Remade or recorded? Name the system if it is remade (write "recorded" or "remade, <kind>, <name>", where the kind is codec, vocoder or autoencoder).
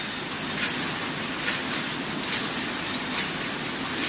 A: recorded